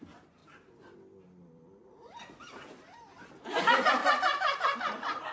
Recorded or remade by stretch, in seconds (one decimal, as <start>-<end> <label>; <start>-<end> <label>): 0.0-5.3 recorded